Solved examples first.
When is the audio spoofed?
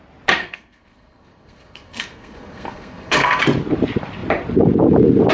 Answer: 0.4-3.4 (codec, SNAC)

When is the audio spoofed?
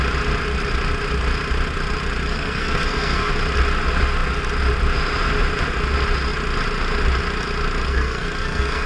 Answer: 2.3-3.3 (codec, SNAC); 7.9-8.9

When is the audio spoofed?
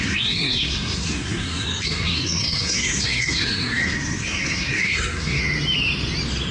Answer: 0.0-5.4 (codec, SNAC)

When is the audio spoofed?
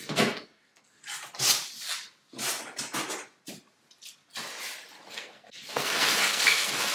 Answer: 0.0-1.0 (codec, SNAC); 5.1-6.9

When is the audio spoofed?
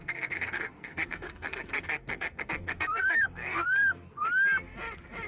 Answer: 0.0-4.2 (codec, SNAC)